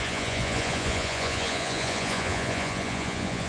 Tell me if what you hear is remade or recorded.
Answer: remade